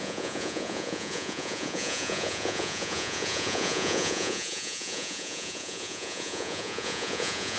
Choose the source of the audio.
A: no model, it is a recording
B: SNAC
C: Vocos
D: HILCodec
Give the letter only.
C